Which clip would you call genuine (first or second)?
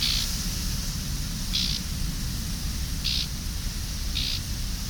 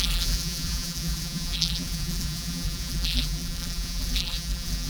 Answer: first